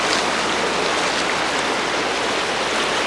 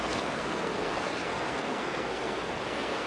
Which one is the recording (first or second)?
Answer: first